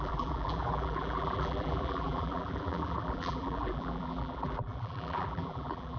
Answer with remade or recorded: remade